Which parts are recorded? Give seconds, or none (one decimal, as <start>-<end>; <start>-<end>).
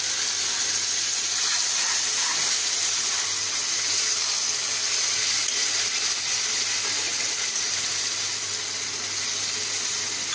0.0-10.3